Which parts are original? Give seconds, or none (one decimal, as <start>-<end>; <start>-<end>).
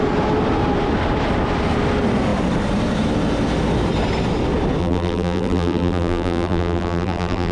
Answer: 0.0-4.8